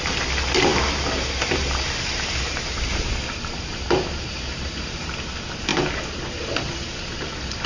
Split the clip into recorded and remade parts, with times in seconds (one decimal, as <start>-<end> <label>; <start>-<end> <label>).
0.0-0.7 recorded; 0.7-5.3 remade; 5.3-7.7 recorded